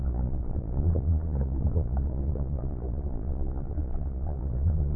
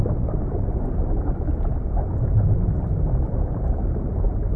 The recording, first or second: second